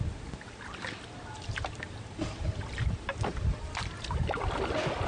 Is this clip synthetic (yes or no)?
no